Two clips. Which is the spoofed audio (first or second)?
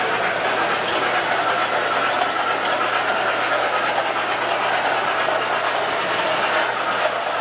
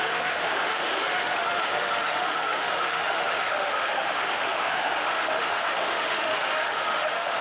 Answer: second